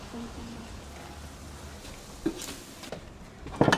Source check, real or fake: real